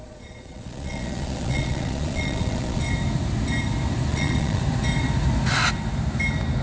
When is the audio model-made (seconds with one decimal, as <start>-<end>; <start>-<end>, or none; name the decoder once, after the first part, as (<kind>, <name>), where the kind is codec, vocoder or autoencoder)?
0.0-2.8 (vocoder, Vocos); 4.1-4.6

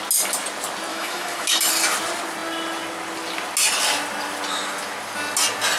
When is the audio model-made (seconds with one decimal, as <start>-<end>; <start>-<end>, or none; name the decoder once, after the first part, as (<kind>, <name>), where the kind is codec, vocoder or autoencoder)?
0.9-1.7 (autoencoder, DAC-VAE)